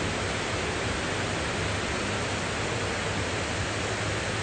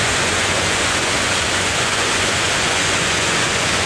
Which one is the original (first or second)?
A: first